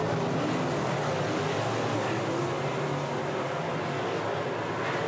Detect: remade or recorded recorded